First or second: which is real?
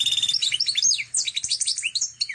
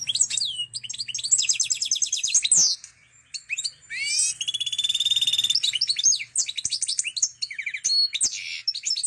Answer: second